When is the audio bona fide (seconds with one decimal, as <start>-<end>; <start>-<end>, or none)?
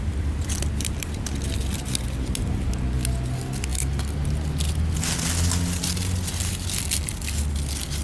0.0-8.0